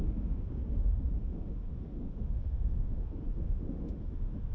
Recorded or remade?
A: remade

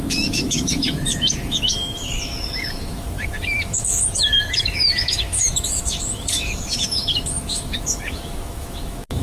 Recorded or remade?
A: remade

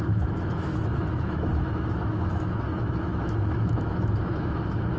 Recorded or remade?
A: remade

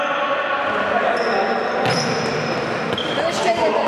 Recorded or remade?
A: recorded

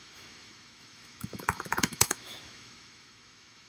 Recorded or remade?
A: remade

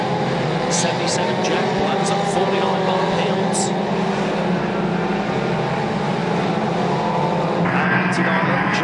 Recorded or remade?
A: recorded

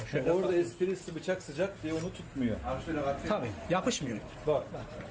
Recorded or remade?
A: recorded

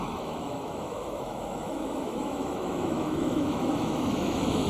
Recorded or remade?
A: remade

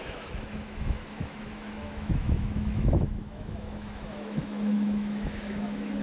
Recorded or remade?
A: remade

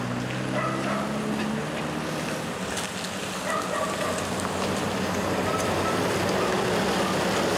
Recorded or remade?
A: recorded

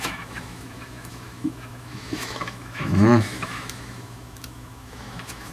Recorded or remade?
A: remade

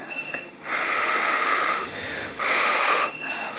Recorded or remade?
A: remade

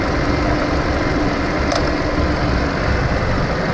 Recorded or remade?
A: recorded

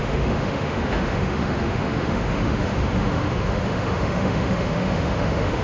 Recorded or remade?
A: remade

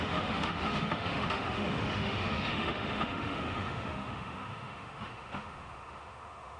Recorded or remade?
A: remade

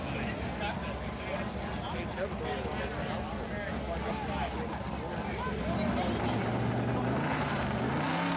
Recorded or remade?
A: recorded